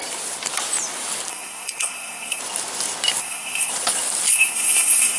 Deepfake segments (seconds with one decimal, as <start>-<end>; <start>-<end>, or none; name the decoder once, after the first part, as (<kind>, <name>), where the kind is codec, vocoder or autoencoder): 1.3-2.4 (codec, SNAC); 3.2-3.7; 4.3-5.2